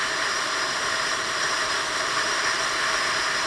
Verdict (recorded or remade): recorded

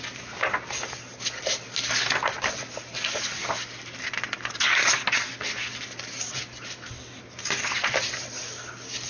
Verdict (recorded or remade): recorded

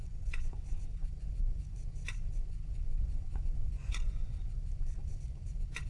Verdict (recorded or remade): remade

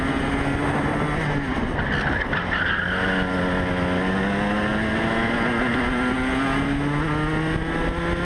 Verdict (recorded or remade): recorded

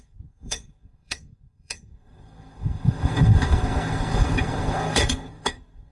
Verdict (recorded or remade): remade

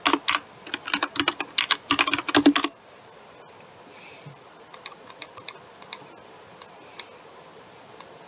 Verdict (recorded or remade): recorded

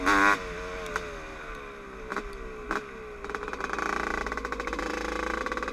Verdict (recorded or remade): recorded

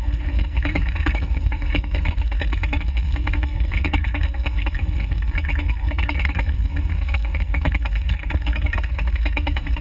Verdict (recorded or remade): remade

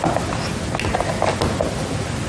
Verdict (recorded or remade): recorded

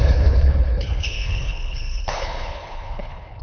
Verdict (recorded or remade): remade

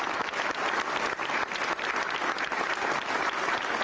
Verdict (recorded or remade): recorded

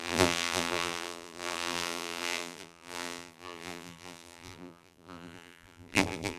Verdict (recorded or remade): remade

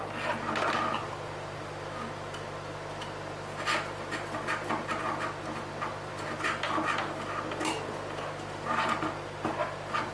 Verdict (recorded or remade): recorded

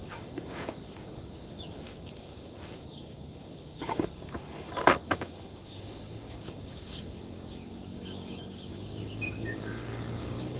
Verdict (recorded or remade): remade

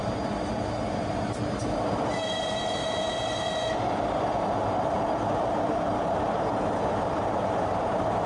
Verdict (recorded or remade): remade